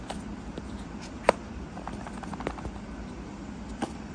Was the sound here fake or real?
fake